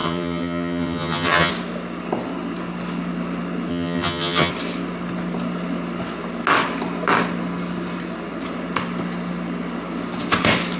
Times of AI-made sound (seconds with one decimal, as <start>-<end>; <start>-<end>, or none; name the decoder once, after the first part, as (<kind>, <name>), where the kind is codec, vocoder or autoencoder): 0.0-1.5 (vocoder, HiFi-GAN); 3.7-4.5